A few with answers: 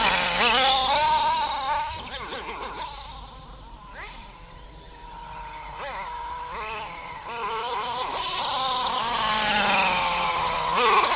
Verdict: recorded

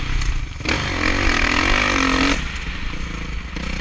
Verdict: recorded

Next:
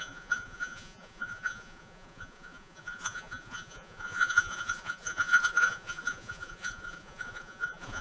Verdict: remade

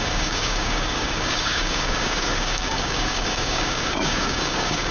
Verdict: remade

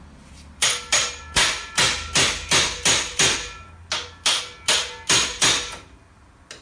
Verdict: recorded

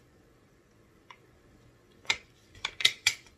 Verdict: remade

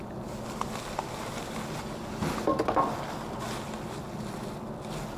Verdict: recorded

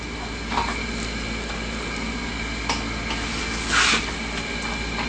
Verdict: recorded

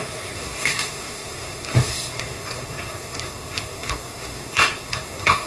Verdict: remade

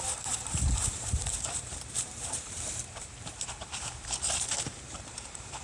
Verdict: remade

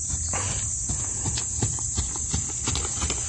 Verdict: recorded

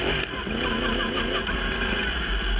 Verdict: recorded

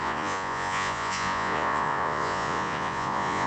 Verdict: remade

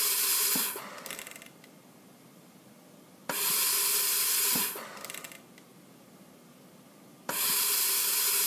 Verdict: remade